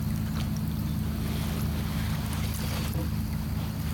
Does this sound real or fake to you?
real